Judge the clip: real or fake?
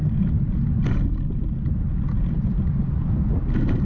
real